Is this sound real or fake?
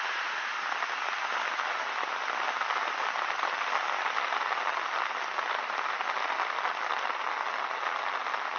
real